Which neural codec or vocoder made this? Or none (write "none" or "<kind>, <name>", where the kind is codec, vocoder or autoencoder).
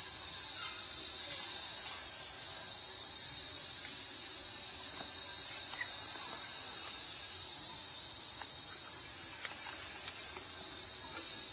none